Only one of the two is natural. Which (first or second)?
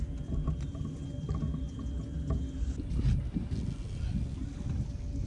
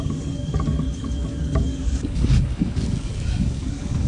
first